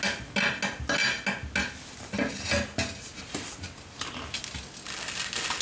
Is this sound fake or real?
real